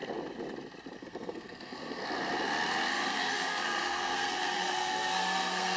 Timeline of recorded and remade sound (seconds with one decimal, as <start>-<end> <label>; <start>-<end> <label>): 0.0-1.0 recorded; 1.0-2.0 remade; 2.0-2.9 recorded; 2.9-5.8 remade